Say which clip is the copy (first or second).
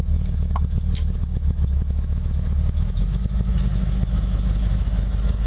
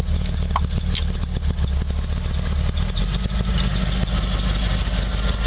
first